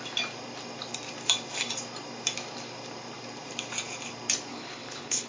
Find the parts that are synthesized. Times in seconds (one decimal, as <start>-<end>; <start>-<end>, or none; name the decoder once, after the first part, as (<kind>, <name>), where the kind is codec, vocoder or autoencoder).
4.5-5.3 (codec, HILCodec)